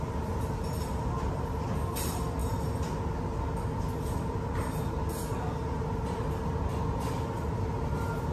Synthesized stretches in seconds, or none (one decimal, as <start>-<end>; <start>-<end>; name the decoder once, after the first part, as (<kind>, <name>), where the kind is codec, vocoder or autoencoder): none